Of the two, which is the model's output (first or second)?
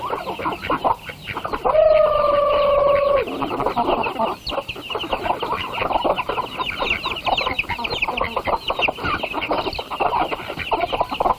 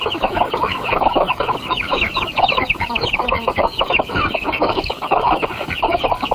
second